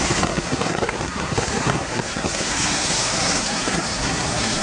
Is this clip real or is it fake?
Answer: fake